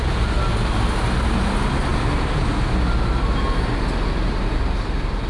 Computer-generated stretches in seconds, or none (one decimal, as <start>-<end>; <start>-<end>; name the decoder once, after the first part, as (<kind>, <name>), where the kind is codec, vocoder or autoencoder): none